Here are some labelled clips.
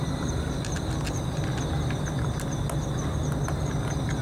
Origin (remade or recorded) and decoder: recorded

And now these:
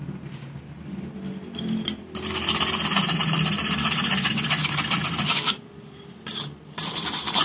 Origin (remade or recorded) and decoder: remade, vocoder, BigVGAN v2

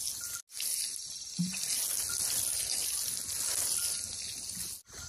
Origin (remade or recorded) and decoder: recorded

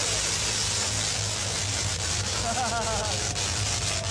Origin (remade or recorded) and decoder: recorded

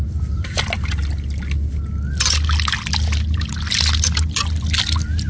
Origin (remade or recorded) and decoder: recorded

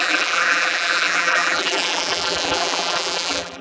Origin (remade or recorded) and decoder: remade, vocoder, BigVGAN v2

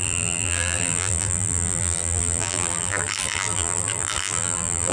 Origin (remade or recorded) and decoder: remade, vocoder, BigVGAN v2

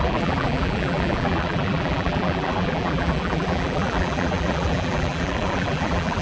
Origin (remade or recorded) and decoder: remade, vocoder, BigVGAN v2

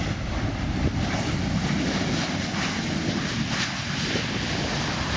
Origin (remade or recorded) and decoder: recorded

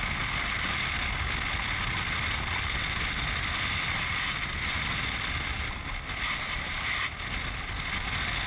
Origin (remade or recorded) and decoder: recorded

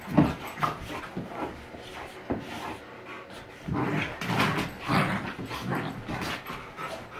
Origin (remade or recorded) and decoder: recorded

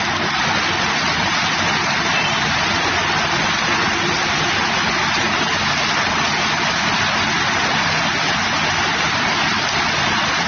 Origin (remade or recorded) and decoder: recorded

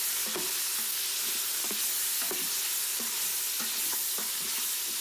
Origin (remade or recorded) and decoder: recorded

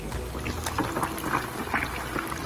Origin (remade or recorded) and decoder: recorded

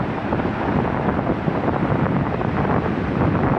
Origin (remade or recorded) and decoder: remade, vocoder, BigVGAN v2